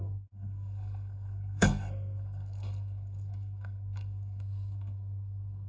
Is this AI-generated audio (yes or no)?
yes